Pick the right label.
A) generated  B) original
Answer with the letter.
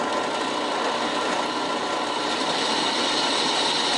B